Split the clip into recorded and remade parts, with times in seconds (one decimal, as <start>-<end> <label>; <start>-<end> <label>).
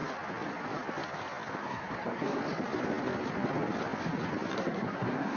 0.0-1.6 recorded; 1.6-2.4 remade; 2.4-4.6 recorded; 4.6-5.4 remade